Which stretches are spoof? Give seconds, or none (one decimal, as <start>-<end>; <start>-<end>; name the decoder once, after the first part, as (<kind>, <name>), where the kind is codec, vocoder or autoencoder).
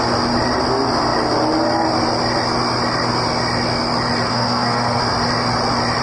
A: 4.3-5.0 (codec, SNAC)